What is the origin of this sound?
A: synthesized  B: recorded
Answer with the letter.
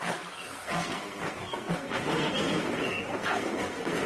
A